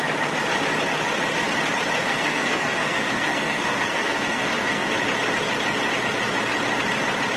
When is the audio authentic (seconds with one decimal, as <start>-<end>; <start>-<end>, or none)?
0.0-2.1; 4.9-7.4